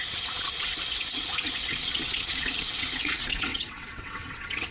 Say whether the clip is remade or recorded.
remade